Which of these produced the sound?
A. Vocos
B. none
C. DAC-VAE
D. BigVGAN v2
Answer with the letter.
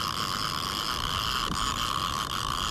B